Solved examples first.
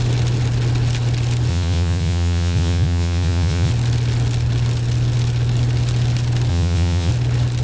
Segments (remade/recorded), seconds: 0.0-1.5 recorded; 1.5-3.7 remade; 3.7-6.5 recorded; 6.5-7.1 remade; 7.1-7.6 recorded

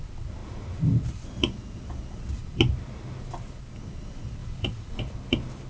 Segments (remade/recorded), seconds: 0.0-4.4 recorded; 4.4-5.0 remade; 5.0-5.7 recorded

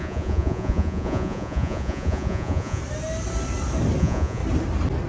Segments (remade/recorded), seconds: 0.0-2.8 remade; 2.8-4.0 recorded; 4.0-4.4 remade; 4.4-5.1 recorded

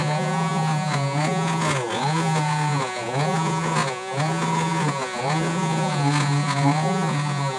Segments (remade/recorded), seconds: 0.0-7.6 remade

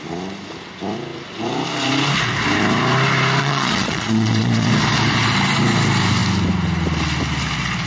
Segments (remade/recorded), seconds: 0.0-3.4 recorded; 3.4-4.7 remade; 4.7-7.9 recorded

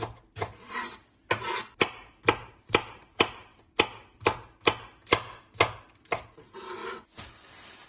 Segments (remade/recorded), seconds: 0.0-7.9 recorded